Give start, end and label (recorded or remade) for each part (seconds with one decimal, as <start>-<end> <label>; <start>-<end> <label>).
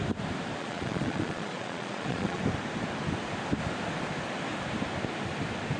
0.0-0.6 recorded; 0.6-2.4 remade; 2.4-5.8 recorded